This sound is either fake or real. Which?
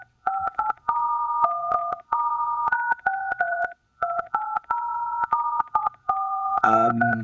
fake